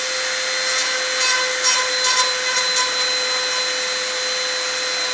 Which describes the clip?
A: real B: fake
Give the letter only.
A